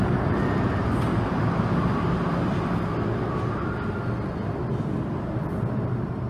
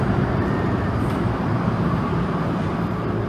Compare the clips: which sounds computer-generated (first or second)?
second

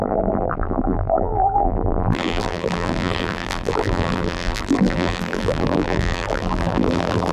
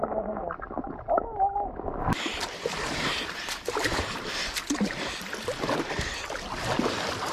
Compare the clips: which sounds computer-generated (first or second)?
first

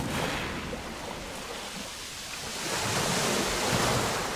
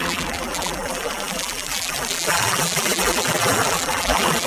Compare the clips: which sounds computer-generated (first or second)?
second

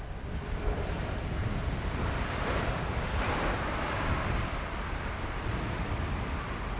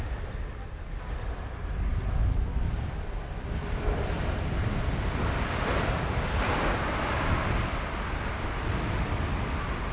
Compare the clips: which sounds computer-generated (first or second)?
first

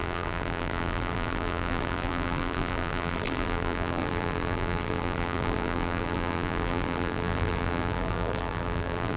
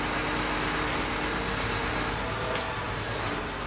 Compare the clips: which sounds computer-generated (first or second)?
first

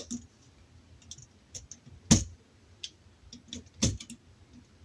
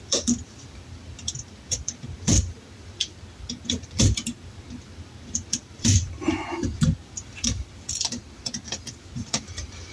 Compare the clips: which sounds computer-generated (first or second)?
second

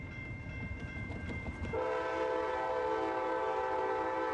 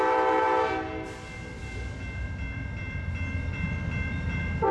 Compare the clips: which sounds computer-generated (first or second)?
first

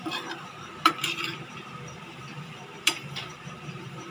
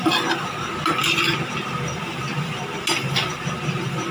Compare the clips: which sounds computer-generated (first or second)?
first